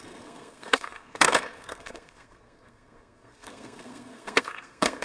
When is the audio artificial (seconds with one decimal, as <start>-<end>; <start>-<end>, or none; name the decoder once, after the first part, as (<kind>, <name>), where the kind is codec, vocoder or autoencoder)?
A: 0.0-5.0 (codec, SNAC)